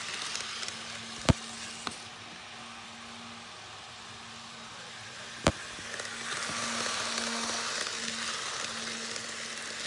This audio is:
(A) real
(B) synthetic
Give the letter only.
A